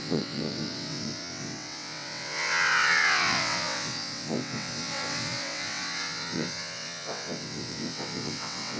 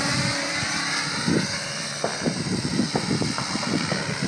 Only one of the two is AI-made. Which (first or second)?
first